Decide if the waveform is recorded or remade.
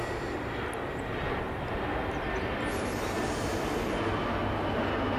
recorded